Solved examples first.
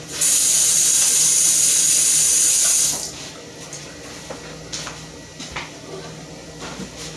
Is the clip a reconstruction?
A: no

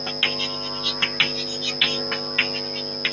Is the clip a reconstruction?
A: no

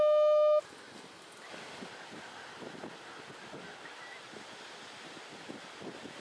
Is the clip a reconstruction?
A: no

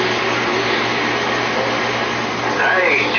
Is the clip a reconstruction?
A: no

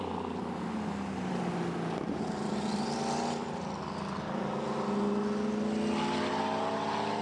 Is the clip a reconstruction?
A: no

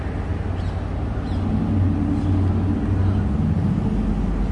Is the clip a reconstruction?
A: no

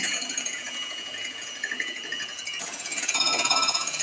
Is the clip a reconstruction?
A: yes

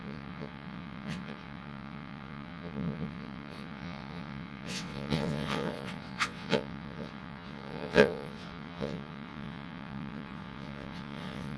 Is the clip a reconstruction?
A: yes